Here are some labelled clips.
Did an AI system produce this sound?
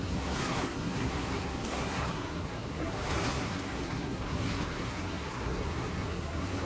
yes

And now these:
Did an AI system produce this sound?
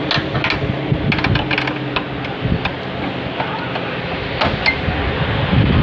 no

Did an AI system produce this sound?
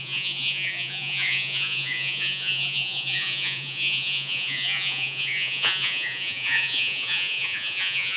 yes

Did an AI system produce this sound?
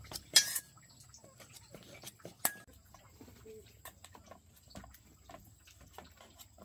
no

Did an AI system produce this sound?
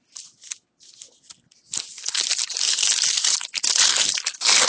no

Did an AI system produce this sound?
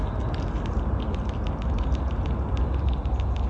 no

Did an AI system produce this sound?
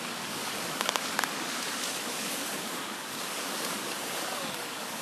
yes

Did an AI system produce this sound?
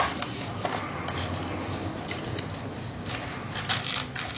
no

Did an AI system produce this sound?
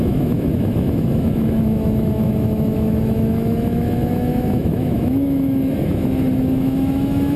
yes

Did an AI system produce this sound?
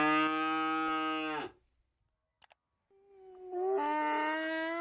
no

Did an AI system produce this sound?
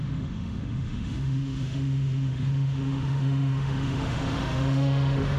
yes